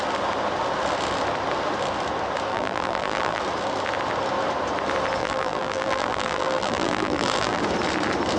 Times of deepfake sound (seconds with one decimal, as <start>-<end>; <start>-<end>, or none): 2.5-3.4; 5.2-7.6